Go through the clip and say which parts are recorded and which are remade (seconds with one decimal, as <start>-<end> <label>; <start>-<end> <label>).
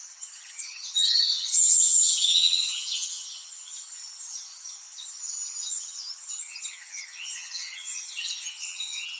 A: 0.0-9.2 remade